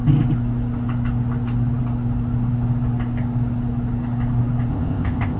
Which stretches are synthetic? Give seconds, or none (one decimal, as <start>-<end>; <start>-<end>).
4.7-5.4